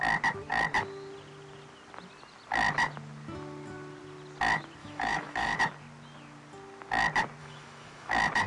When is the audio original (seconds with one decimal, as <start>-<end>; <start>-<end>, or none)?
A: 0.0-4.8; 5.6-7.4; 8.1-8.5